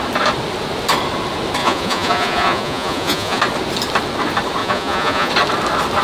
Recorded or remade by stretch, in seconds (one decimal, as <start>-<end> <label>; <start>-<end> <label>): 0.0-1.6 recorded; 1.6-3.4 remade; 3.4-4.6 recorded; 4.6-5.3 remade; 5.3-6.0 recorded